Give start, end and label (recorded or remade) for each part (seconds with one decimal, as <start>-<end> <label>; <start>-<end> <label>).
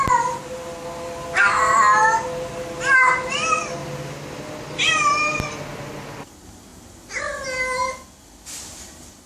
0.0-2.0 recorded; 2.0-2.7 remade; 2.7-3.8 recorded; 3.8-5.1 remade; 5.1-6.7 recorded; 6.7-7.3 remade; 7.3-9.3 recorded